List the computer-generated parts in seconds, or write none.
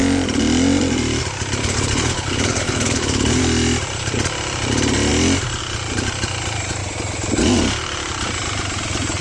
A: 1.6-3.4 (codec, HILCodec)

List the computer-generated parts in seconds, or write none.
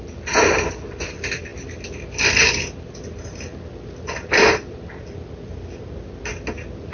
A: none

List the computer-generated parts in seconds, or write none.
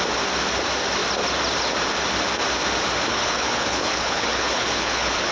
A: 3.1-5.3 (codec, HILCodec)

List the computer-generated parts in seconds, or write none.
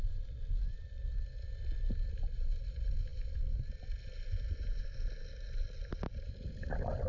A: none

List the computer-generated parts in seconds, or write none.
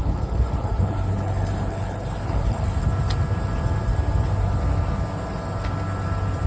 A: 0.0-2.8 (codec, HILCodec)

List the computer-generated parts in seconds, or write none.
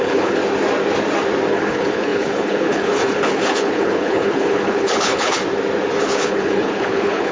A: 0.0-0.4 (codec, HILCodec); 1.5-5.4; 6.0-7.3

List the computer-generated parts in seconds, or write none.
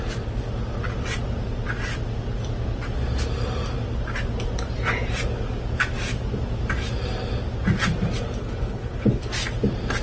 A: 8.4-9.3 (codec, HILCodec)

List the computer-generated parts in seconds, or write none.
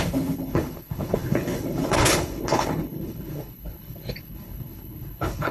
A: 0.0-5.5 (codec, HILCodec)